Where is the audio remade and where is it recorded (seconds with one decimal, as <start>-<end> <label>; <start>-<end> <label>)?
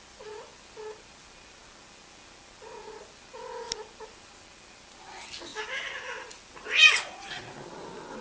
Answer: 0.0-8.2 recorded